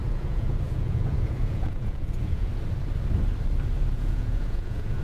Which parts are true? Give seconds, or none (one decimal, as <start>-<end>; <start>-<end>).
2.5-3.9